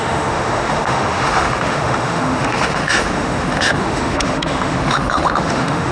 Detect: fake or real fake